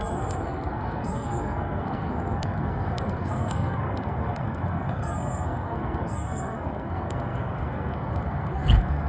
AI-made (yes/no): yes